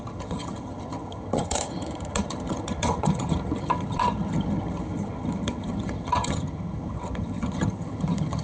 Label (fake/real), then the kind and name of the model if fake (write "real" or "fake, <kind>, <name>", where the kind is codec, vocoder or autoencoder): fake, vocoder, HiFi-GAN